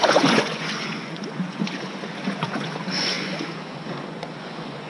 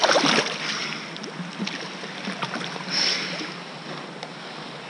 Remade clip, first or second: first